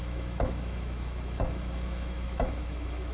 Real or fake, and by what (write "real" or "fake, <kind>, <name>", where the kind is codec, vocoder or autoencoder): fake, autoencoder, DAC-VAE